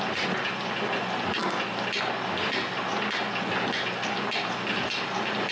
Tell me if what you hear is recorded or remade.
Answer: recorded